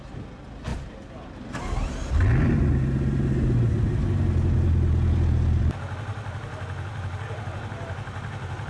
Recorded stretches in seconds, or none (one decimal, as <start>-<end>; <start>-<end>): 0.0-8.7

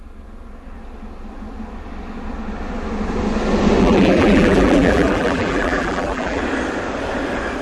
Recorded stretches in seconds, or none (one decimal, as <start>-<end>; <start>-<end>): 0.0-3.8; 6.4-7.6

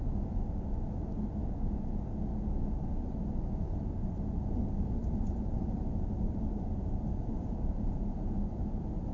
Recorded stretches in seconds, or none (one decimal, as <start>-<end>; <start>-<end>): 0.0-5.0; 7.9-9.1

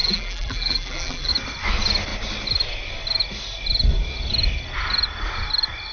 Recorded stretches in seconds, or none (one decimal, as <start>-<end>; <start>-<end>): 1.3-5.9

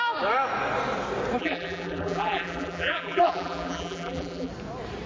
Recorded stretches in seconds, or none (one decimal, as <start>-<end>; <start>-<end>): 0.0-1.4; 4.5-5.1

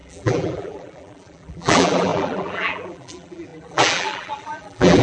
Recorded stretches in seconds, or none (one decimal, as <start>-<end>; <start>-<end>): none